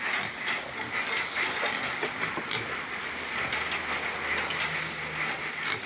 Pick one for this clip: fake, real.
real